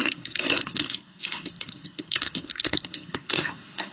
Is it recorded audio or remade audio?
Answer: remade